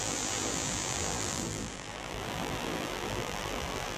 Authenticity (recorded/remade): remade